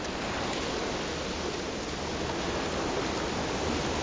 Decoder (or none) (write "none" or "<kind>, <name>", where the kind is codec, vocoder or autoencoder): none